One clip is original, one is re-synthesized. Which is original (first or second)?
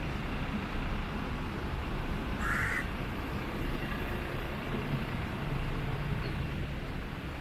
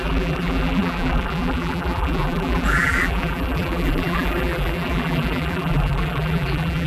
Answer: first